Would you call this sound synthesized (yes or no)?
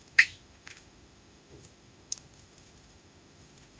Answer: yes